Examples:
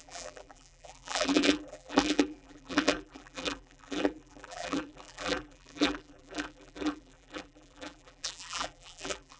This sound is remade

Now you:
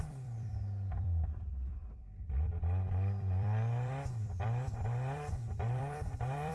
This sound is remade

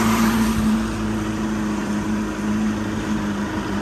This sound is recorded